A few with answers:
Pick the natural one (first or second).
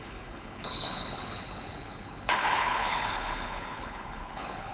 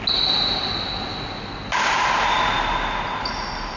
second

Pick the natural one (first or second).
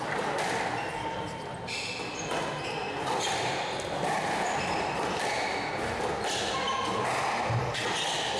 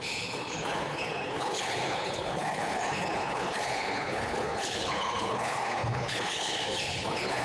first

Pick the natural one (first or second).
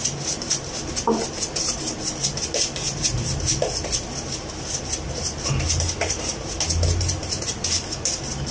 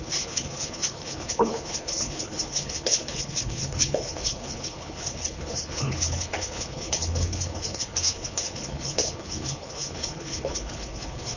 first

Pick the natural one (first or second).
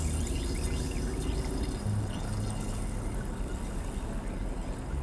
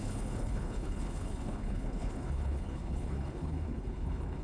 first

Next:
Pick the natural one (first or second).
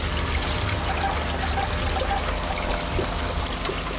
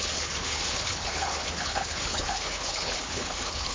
first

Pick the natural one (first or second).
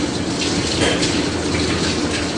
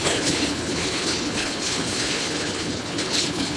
first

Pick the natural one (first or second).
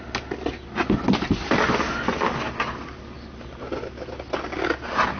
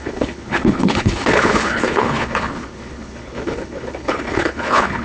first